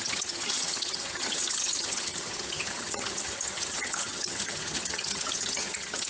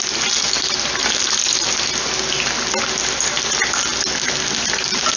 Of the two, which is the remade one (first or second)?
first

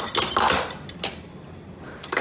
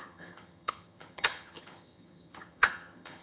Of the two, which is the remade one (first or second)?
second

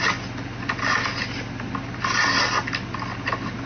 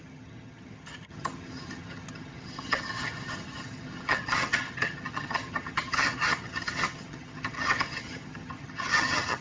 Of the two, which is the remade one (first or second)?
second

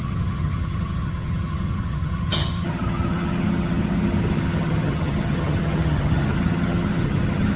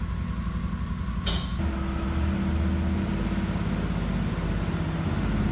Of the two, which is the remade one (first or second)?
first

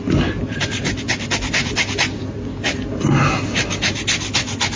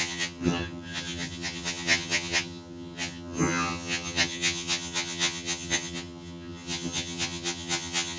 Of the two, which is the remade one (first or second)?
second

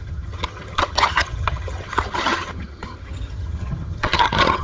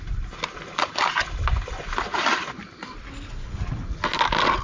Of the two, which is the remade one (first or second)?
first